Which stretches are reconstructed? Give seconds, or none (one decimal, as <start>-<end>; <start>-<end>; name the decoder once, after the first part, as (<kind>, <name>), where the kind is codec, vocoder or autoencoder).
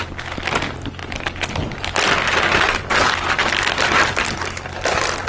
none